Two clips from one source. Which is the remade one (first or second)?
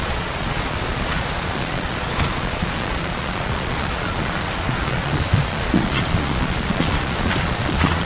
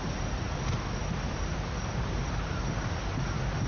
first